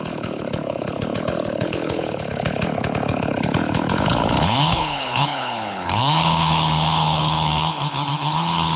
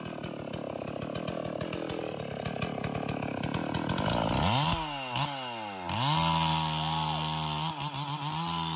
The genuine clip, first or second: second